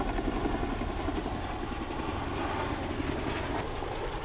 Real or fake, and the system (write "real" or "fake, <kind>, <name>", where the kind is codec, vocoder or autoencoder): real